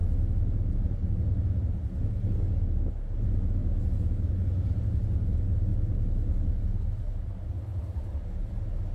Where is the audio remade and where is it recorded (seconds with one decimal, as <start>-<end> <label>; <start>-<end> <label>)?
0.0-8.9 recorded

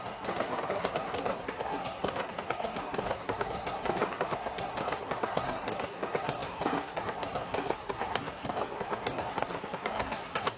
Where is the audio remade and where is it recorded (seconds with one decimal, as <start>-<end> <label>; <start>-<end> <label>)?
0.0-10.6 remade

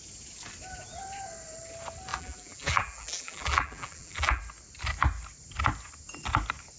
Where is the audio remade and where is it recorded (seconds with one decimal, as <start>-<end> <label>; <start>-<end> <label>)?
0.0-2.1 recorded; 2.1-4.4 remade; 4.4-6.8 recorded

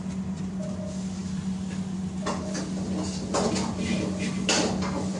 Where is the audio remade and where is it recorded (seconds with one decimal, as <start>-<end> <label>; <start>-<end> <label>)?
0.0-5.2 recorded

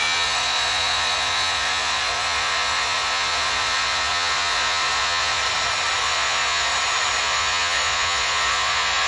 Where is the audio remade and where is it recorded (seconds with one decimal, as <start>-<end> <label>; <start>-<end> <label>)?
0.0-5.4 remade; 5.4-6.0 recorded; 6.0-6.7 remade; 6.7-7.2 recorded; 7.2-9.1 remade

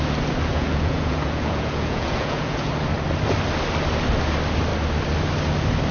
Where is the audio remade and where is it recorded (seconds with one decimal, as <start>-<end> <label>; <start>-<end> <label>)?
0.0-0.5 recorded; 0.5-2.7 remade; 2.7-5.9 recorded

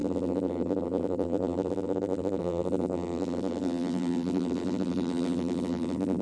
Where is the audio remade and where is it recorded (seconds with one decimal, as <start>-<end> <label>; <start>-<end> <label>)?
0.0-6.2 remade

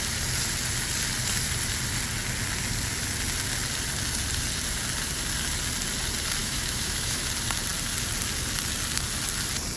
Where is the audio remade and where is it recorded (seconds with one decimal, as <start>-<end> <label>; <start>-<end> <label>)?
0.0-6.4 recorded; 6.4-7.2 remade; 7.2-9.8 recorded